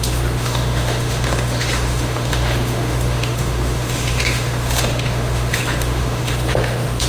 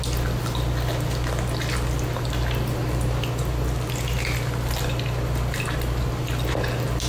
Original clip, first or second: second